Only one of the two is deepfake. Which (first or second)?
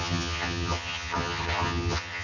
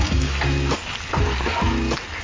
first